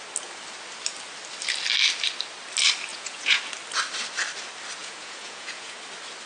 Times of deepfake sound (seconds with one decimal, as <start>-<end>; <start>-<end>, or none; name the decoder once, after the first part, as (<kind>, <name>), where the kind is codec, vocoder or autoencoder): 2.9-3.4 (vocoder, Vocos); 4.8-5.8